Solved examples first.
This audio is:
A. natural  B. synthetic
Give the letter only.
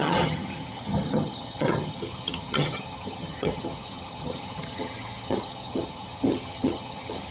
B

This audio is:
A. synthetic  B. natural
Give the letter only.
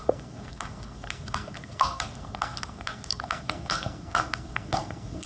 A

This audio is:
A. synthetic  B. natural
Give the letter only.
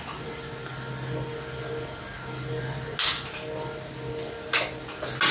B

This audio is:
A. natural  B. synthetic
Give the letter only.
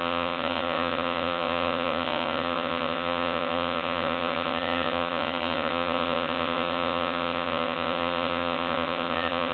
B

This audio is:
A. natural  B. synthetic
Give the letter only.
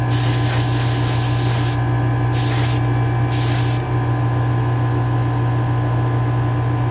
A